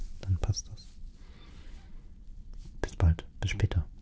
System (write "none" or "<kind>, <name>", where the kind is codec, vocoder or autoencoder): none